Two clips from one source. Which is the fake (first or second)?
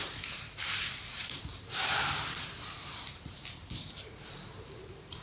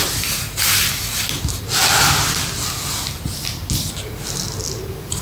first